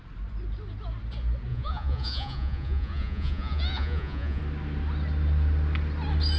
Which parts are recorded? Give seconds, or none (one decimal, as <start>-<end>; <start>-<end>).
0.0-1.5; 4.4-6.4